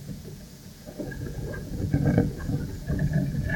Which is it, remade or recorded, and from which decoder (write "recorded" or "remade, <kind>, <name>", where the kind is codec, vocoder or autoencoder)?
remade, vocoder, Vocos